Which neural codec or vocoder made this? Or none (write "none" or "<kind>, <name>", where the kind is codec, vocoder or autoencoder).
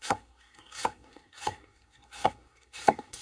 codec, SNAC